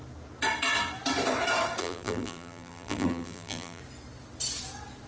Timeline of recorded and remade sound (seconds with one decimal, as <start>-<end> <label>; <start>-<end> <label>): 0.0-1.8 recorded; 1.8-3.8 remade; 3.8-5.1 recorded